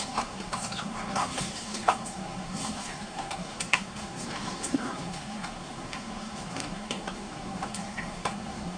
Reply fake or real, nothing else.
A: fake